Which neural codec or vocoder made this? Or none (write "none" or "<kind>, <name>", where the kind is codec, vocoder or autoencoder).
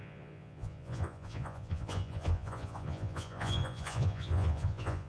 vocoder, Vocos